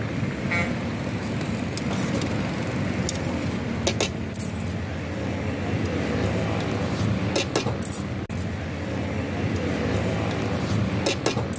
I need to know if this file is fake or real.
real